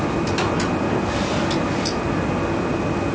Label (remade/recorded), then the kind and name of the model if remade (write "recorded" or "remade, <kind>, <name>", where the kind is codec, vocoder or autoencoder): recorded